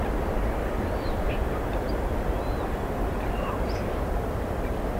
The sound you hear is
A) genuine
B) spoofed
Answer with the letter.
B